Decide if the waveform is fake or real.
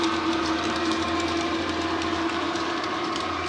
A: fake